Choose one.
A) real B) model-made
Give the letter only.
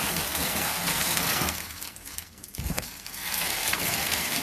B